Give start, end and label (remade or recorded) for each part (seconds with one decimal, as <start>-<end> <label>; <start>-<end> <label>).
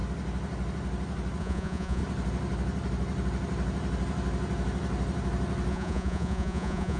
0.0-1.4 recorded; 1.4-2.0 remade; 2.0-5.7 recorded; 5.7-7.0 remade